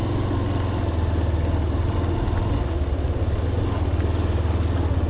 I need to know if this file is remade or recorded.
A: recorded